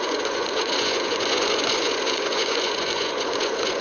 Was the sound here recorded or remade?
remade